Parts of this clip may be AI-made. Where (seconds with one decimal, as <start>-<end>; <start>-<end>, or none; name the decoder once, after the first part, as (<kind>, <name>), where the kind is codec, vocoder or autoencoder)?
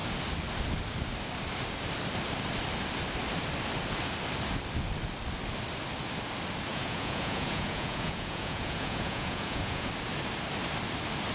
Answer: 6.7-9.9 (vocoder, Vocos)